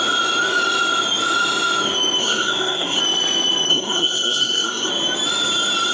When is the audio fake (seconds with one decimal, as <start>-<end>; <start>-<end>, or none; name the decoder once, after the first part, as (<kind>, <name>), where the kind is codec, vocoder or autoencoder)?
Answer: 2.2-3.0 (codec, SNAC); 3.7-4.9